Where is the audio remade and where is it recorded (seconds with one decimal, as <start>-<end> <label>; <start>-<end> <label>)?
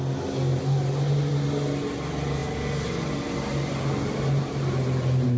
0.0-5.4 recorded